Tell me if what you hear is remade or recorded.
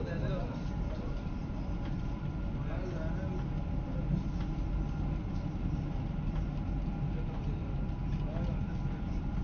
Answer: recorded